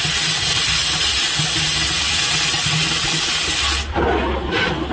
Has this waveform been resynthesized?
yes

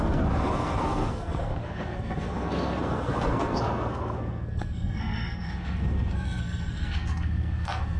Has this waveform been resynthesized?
yes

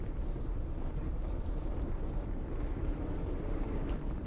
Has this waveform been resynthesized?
yes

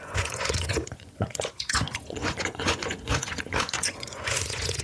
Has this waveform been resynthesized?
yes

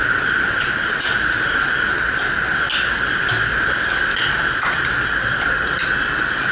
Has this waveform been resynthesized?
no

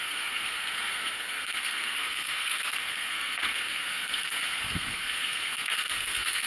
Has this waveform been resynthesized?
yes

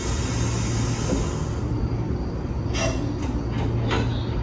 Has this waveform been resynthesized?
no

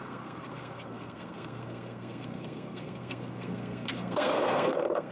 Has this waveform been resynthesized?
yes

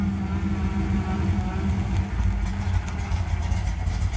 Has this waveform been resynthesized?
no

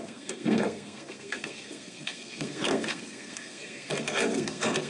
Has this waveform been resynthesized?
yes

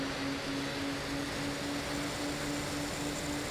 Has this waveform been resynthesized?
no